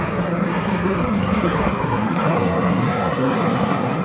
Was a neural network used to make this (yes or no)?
yes